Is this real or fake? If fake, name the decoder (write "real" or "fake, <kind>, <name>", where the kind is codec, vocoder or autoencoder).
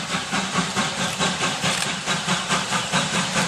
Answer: fake, vocoder, BigVGAN v2